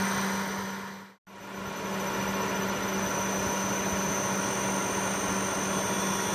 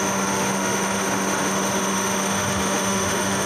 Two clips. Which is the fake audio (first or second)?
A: second